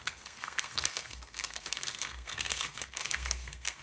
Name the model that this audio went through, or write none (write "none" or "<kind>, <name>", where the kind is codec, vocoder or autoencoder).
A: codec, SNAC